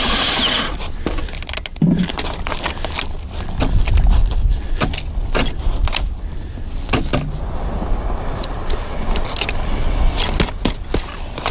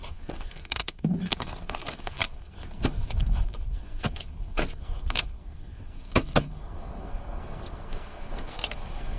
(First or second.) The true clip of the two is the first